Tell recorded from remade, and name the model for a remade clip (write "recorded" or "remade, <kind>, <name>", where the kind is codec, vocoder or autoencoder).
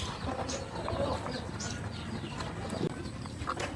recorded